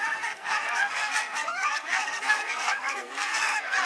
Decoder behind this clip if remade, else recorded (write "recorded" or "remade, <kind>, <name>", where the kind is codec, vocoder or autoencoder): remade, codec, SNAC